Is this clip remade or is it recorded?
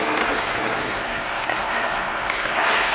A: remade